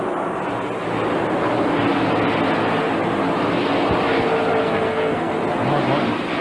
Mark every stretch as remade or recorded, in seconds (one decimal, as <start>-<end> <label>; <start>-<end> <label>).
0.0-4.6 recorded; 4.6-5.3 remade; 5.3-6.4 recorded